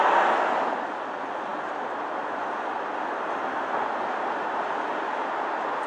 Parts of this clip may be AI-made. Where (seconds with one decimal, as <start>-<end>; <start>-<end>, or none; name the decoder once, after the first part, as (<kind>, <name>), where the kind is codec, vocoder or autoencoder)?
none